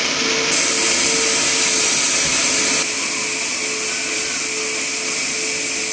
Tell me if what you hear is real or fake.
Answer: real